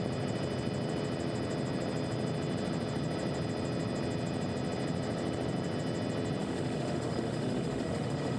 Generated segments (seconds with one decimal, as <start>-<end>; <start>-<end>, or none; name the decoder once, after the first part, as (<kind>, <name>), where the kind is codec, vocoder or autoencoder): 6.4-8.4 (autoencoder, DAC-VAE)